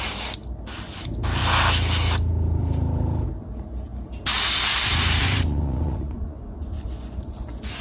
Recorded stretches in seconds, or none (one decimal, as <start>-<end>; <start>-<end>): 0.0-5.2